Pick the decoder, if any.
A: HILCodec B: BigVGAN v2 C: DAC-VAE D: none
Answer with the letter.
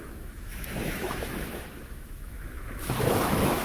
C